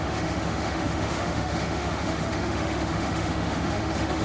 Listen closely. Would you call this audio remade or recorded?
remade